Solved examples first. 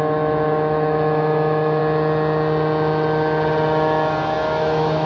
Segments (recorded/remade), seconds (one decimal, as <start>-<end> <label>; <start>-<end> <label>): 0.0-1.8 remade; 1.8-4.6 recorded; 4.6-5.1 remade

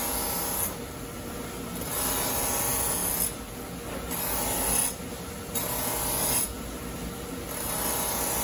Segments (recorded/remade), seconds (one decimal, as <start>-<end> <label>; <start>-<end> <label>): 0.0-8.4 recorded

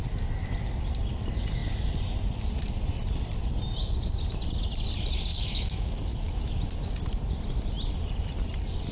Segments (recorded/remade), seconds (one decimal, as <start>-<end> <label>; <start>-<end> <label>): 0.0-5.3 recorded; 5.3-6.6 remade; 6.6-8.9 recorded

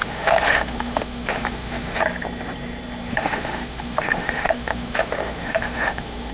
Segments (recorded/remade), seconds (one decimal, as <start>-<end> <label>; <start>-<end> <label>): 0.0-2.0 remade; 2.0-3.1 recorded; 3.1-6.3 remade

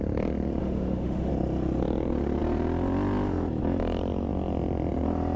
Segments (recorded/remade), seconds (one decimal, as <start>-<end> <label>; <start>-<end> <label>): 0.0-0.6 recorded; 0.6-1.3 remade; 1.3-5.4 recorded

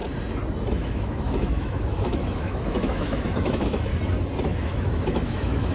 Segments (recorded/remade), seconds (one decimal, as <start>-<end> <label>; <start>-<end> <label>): 0.0-0.7 recorded; 0.7-3.9 remade; 3.9-4.4 recorded; 4.4-5.7 remade

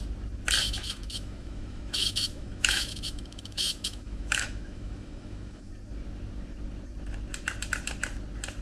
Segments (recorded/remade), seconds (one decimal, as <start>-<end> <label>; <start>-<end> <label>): 0.0-0.6 recorded; 0.6-5.7 remade; 5.7-8.6 recorded

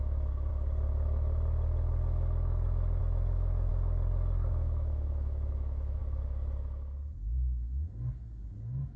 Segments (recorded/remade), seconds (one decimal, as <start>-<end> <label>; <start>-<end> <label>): 0.0-0.5 remade; 0.5-3.0 recorded; 3.0-3.7 remade; 3.7-4.5 recorded; 4.5-6.0 remade; 6.0-9.0 recorded